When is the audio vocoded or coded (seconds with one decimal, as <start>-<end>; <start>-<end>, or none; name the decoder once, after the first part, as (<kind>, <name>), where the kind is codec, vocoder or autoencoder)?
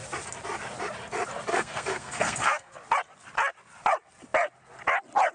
1.5-2.7 (codec, SNAC)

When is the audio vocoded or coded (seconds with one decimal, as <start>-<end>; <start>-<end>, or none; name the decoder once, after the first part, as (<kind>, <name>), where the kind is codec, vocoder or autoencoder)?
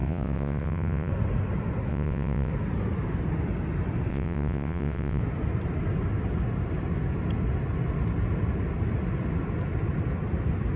0.0-1.1 (vocoder, WaveNeXt); 1.9-2.5; 4.1-5.2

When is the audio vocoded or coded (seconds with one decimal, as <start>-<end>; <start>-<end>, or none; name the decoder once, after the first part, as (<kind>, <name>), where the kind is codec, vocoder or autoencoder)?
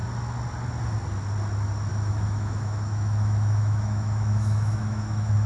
1.9-5.5 (autoencoder, DAC-VAE)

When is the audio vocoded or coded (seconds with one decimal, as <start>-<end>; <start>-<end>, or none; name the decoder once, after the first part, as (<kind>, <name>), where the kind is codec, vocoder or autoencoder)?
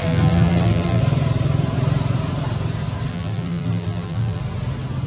0.0-1.0 (vocoder, BigVGAN v2); 3.1-4.4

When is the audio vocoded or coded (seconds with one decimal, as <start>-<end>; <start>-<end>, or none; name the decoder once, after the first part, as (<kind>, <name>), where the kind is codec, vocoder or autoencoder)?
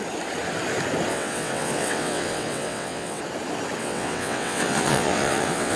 1.1-3.2 (vocoder, WaveNeXt); 3.8-5.8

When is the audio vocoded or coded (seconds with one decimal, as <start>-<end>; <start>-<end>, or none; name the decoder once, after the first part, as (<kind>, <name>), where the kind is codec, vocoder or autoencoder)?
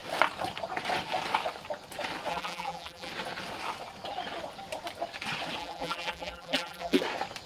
2.3-3.1 (vocoder, BigVGAN v2); 5.6-7.0